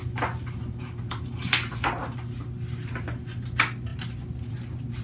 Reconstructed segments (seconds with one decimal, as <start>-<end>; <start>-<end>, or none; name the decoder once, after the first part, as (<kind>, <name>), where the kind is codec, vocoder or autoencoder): 0.0-1.5 (vocoder, BigVGAN v2)